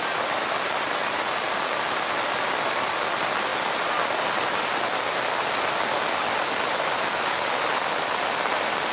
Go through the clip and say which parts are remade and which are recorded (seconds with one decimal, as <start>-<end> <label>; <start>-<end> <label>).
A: 0.0-8.9 recorded